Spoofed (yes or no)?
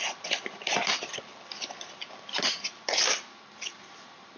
yes